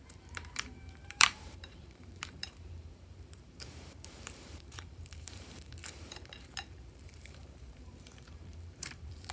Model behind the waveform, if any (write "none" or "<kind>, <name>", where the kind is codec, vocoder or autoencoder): vocoder, BigVGAN v2